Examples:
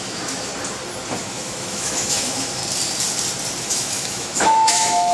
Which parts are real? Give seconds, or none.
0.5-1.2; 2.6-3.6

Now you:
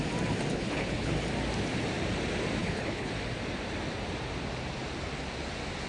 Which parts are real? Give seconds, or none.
0.0-0.5; 1.1-2.6; 3.1-5.9

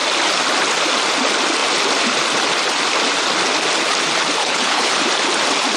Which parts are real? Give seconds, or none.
0.0-4.4; 4.9-5.8

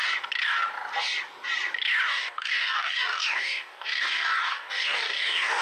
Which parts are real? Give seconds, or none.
0.0-2.1

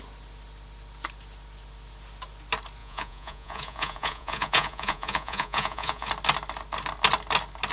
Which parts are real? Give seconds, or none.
0.0-2.8; 6.1-7.7